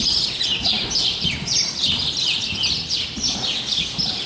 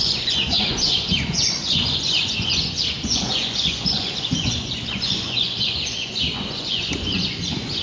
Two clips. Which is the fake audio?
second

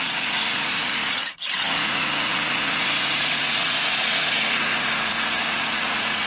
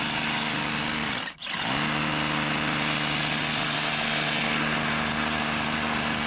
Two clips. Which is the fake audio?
first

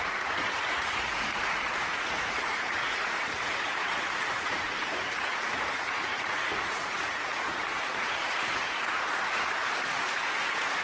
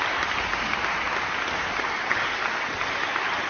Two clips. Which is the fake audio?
first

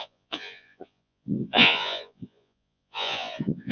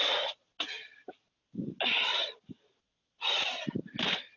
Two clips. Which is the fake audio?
first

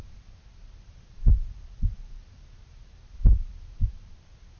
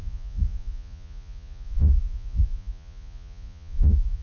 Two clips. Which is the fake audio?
second